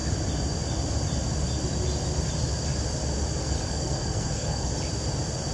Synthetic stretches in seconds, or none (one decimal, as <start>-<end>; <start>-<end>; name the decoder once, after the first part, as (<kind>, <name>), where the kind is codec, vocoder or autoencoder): 3.4-4.7 (codec, SNAC)